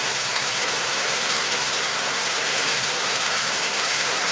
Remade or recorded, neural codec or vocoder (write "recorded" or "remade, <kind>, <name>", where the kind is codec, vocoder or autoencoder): remade, codec, SNAC